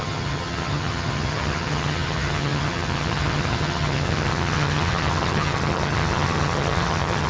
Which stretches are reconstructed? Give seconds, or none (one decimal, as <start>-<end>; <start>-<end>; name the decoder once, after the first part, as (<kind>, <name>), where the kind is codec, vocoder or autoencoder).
0.0-7.3 (vocoder, HiFi-GAN)